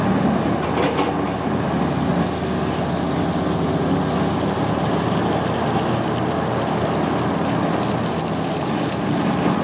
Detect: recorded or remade recorded